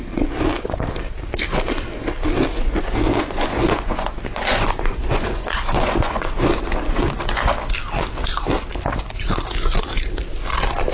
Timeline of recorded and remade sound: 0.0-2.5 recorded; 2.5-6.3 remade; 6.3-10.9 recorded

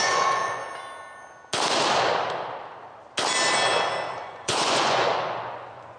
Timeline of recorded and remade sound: 0.0-0.6 remade; 0.6-4.2 recorded; 4.2-6.0 remade

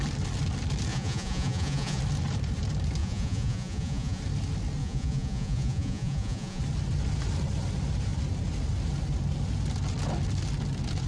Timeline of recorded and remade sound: 0.0-0.9 recorded; 0.9-2.0 remade; 2.0-3.0 recorded; 3.0-4.2 remade; 4.2-4.8 recorded; 4.8-6.6 remade; 6.6-11.1 recorded

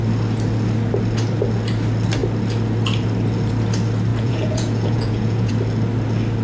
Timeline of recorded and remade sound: 0.0-4.1 recorded; 4.1-5.5 remade; 5.5-6.4 recorded

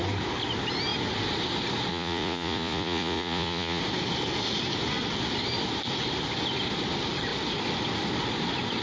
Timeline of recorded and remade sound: 0.0-1.9 recorded; 1.9-3.8 remade; 3.8-8.8 recorded

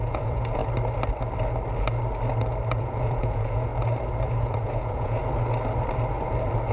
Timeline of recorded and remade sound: 0.0-0.6 remade; 0.6-2.8 recorded; 2.8-3.7 remade; 3.7-4.3 recorded; 4.3-5.2 remade; 5.2-6.7 recorded

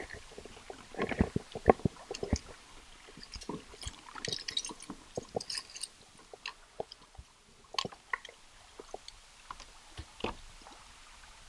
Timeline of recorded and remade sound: 0.0-6.5 recorded; 6.5-7.2 remade; 7.2-11.5 recorded